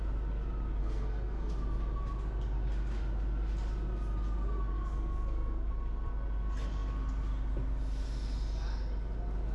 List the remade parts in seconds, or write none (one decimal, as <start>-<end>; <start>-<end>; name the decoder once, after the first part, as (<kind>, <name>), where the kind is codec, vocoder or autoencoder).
0.8-1.5 (codec, SNAC); 4.7-5.7